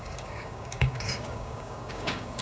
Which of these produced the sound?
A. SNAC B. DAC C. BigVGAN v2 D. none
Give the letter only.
B